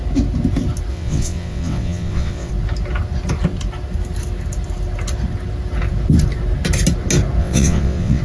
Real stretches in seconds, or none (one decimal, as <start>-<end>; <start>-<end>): 0.0-0.9; 2.5-7.4